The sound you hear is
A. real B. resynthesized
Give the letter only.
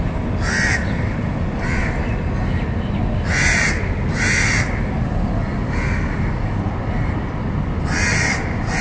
A